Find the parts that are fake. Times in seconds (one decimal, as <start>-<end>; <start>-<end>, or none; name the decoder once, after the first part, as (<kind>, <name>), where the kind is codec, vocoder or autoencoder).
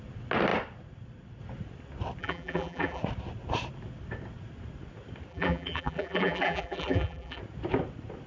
2.2-3.0 (vocoder, BigVGAN v2); 5.3-7.4